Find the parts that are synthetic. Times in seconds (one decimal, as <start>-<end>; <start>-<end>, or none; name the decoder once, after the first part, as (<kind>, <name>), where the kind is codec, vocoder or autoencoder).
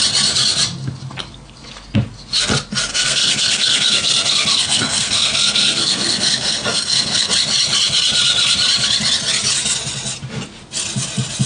2.9-7.3 (codec, SNAC)